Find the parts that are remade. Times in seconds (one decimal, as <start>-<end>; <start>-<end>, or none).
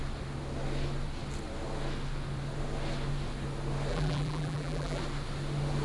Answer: 3.9-5.0